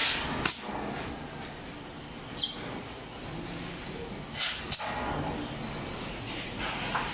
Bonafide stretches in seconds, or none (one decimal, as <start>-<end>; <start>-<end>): 0.0-2.7; 3.2-6.0